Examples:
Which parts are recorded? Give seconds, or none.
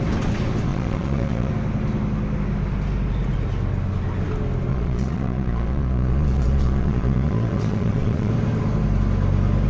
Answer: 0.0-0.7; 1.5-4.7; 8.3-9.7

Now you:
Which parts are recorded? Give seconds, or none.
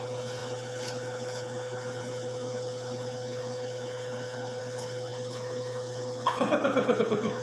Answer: none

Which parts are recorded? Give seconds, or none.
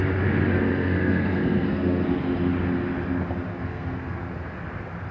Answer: 0.0-0.4; 2.2-3.5; 4.2-5.1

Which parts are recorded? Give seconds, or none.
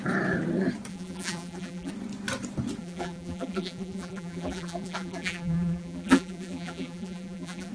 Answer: 0.0-0.9; 1.9-2.8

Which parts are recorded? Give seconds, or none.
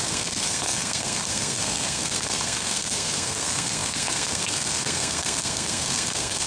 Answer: none